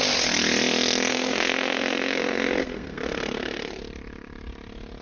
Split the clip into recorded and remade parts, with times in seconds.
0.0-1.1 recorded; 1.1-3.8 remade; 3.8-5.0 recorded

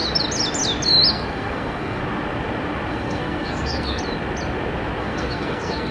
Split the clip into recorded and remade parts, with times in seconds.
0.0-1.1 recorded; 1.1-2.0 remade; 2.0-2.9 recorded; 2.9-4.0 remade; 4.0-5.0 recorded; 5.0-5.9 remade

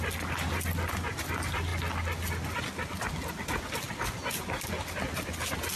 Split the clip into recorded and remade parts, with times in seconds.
0.0-5.8 recorded